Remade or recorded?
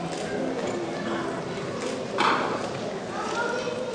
recorded